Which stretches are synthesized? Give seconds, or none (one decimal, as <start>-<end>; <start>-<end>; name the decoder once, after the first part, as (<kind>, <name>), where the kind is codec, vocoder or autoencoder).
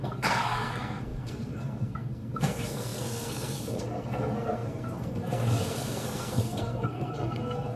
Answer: 0.0-7.8 (codec, SNAC)